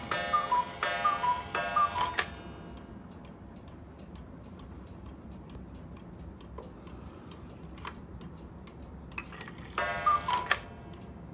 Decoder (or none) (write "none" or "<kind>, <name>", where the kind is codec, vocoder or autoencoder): none